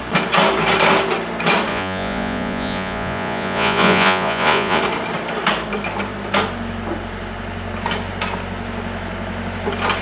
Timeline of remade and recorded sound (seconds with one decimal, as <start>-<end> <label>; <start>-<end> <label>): 0.0-1.7 recorded; 1.7-4.8 remade; 4.8-10.0 recorded